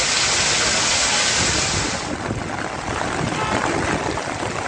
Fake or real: real